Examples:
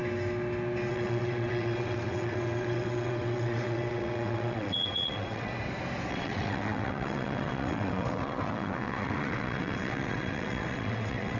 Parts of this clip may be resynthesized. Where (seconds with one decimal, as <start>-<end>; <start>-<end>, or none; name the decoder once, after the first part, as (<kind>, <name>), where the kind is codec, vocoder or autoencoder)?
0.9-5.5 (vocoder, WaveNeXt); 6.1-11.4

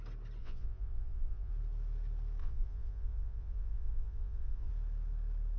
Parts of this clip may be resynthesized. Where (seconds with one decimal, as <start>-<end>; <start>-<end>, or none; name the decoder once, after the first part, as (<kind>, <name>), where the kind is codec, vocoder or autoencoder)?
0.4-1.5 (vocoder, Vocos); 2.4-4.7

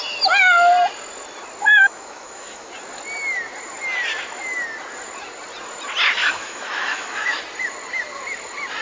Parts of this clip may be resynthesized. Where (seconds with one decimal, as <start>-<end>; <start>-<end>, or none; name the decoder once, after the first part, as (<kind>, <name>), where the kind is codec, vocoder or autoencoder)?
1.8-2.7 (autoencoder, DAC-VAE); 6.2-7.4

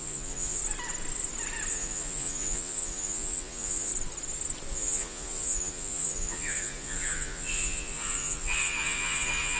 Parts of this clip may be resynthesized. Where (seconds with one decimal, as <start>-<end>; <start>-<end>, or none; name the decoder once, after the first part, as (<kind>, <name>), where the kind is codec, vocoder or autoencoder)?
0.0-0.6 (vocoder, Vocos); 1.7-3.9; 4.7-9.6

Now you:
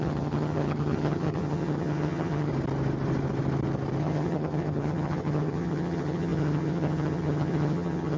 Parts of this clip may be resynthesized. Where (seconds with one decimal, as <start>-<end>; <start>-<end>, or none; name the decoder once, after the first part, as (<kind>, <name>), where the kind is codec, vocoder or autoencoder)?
0.0-2.5 (vocoder, HiFi-GAN); 4.0-8.2

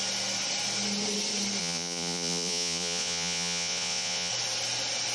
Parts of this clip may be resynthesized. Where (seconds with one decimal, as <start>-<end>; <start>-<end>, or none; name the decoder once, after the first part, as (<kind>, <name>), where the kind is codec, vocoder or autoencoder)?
1.6-4.3 (vocoder, Vocos)